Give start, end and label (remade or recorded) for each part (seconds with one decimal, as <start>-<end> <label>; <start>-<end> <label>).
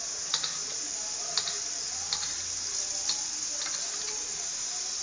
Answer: 0.0-5.0 recorded